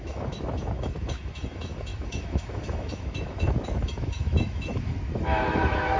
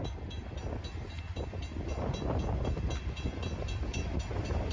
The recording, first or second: second